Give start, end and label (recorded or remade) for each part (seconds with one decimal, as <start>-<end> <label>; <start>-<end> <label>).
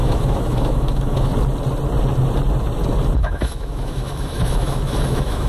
0.0-1.3 remade; 1.3-3.2 recorded; 3.2-5.5 remade